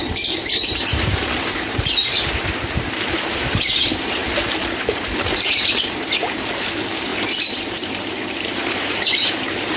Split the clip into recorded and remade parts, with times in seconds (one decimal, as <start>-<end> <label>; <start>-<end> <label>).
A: 0.0-2.0 remade; 2.0-3.5 recorded; 3.5-9.8 remade